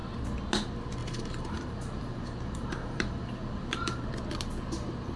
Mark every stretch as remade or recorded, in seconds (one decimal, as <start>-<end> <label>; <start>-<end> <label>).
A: 0.0-1.0 recorded; 1.0-4.1 remade; 4.1-5.2 recorded